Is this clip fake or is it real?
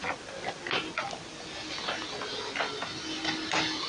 real